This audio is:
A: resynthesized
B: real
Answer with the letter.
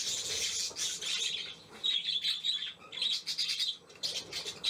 B